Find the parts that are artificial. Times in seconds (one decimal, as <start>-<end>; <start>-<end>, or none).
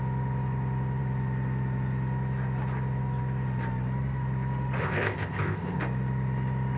4.8-5.8